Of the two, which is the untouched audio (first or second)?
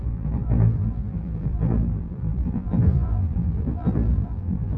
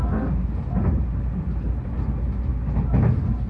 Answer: second